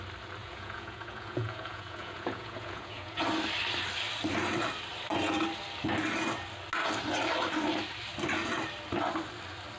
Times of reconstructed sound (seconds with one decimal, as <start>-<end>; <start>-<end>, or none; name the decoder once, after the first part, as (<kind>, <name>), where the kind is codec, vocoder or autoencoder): 0.4-3.2 (vocoder, Vocos)